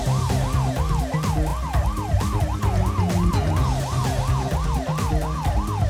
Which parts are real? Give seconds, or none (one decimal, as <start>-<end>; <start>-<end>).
0.0-5.9